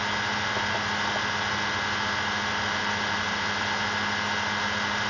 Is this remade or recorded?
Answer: recorded